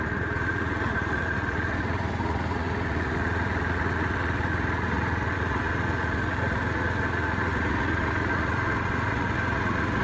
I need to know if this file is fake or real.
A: fake